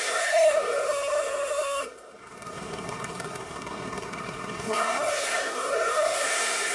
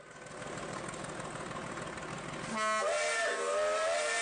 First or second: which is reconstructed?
first